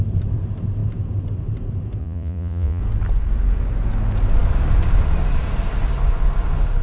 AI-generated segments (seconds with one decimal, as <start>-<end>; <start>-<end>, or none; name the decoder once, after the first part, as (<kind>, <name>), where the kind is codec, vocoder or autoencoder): 2.0-2.8 (vocoder, Vocos)